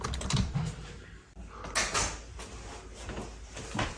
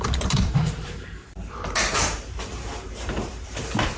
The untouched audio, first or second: first